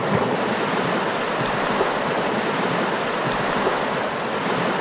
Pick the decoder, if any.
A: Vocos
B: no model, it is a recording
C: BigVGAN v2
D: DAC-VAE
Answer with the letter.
B